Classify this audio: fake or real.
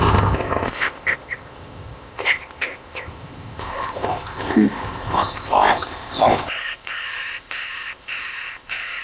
fake